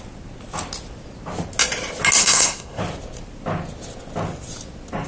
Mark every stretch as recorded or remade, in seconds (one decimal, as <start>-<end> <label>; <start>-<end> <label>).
0.0-2.2 recorded; 2.2-2.8 remade; 2.8-5.1 recorded